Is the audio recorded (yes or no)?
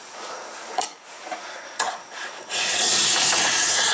no